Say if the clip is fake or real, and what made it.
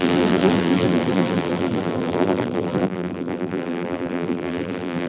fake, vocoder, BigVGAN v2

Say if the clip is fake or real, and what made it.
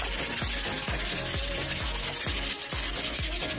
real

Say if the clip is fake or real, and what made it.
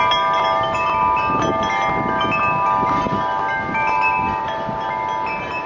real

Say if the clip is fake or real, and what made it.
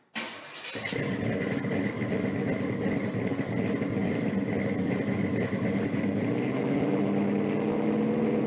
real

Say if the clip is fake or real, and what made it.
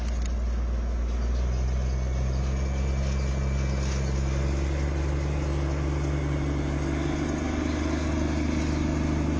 real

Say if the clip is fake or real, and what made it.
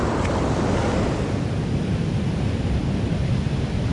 real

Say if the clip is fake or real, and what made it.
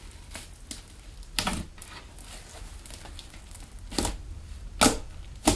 real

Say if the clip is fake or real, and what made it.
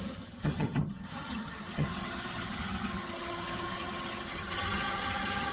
fake, vocoder, HiFi-GAN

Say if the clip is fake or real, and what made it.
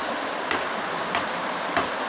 real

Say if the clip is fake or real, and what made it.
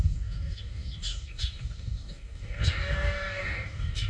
fake, codec, DAC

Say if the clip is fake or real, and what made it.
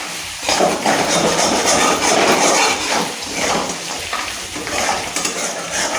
fake, vocoder, BigVGAN v2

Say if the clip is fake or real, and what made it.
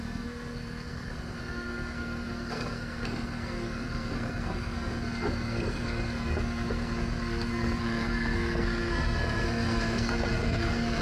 fake, codec, SNAC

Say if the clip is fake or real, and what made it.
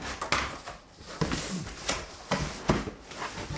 real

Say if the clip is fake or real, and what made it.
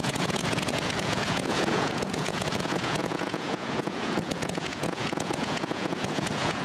fake, vocoder, Vocos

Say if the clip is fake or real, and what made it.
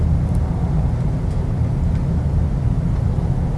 real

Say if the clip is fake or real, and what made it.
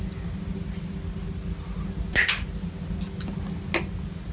real